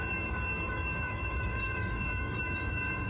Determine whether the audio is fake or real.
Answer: fake